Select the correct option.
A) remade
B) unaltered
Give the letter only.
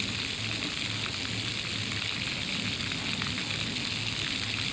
B